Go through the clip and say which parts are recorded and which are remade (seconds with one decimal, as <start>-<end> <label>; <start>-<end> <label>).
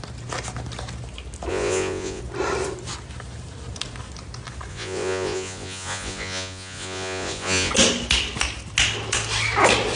0.0-1.5 recorded; 1.5-2.2 remade; 2.2-4.7 recorded; 4.7-7.7 remade; 7.7-10.0 recorded